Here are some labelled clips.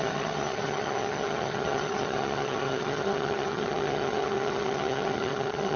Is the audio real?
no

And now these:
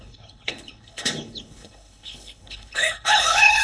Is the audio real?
no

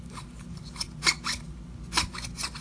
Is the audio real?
yes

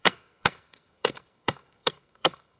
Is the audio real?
no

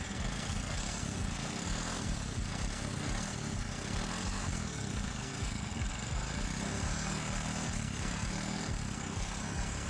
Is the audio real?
no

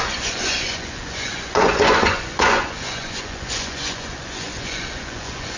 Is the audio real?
no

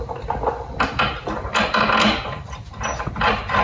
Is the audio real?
yes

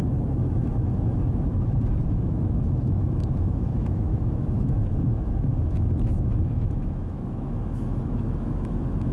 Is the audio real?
no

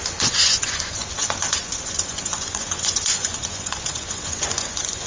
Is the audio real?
no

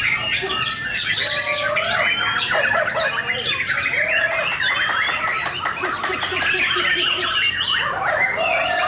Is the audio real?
yes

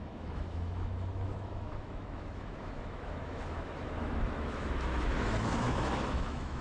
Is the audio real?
no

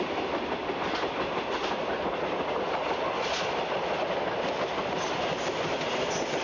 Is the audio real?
yes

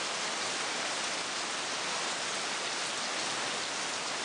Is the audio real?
yes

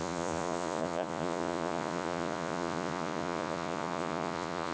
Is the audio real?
no